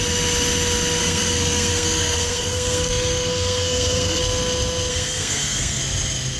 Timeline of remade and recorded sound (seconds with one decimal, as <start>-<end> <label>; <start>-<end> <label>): 0.0-1.0 recorded; 1.0-4.2 remade; 4.2-4.9 recorded; 4.9-5.8 remade; 5.8-6.4 recorded